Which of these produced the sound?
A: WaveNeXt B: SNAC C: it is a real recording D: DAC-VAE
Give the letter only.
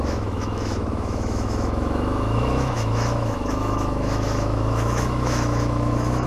D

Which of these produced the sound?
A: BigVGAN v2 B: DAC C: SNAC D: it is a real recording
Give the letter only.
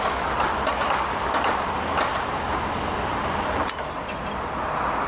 A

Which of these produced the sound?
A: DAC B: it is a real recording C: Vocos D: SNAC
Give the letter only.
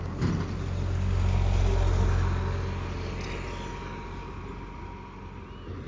B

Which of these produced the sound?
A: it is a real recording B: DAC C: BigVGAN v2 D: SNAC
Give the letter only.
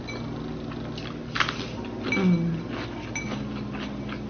A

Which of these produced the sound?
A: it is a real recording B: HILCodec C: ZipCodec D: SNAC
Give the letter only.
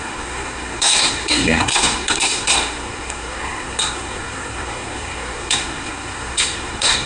D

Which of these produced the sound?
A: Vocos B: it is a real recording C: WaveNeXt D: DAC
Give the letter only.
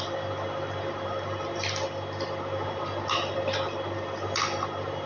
B